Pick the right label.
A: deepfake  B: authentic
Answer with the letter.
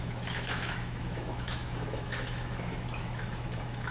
A